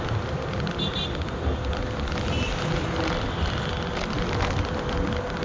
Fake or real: real